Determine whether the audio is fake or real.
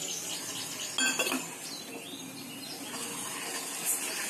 real